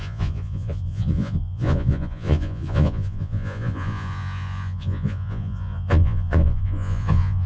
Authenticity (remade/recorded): remade